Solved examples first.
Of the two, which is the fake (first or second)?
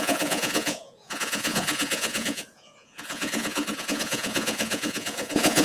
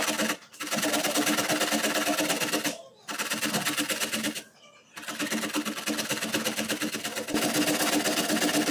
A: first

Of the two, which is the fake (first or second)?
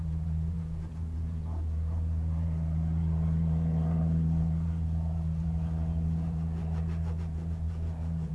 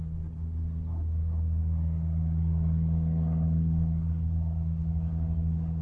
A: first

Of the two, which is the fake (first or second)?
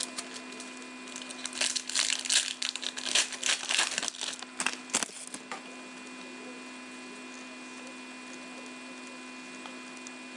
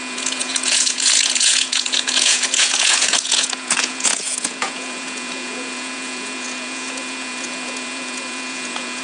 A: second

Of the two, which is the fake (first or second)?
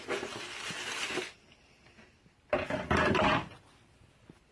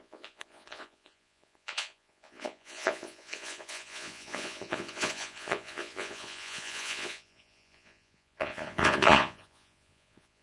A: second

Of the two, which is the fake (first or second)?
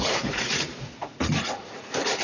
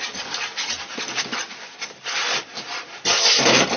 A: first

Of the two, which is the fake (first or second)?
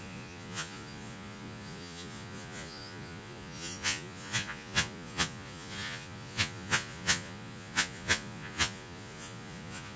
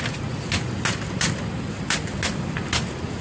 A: first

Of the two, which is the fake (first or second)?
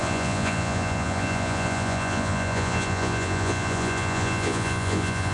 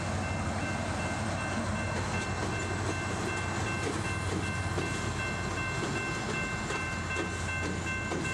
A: first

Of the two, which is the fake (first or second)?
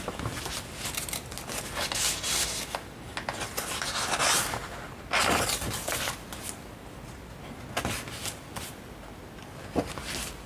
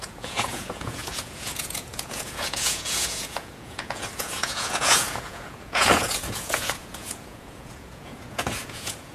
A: second